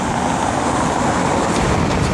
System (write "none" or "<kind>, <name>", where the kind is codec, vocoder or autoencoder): none